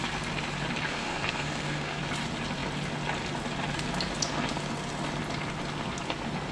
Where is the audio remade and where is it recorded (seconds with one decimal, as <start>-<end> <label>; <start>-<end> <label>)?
0.0-0.9 recorded; 0.9-2.0 remade; 2.0-6.5 recorded